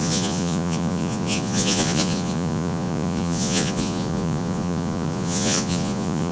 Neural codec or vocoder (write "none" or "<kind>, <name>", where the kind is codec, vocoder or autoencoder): vocoder, Vocos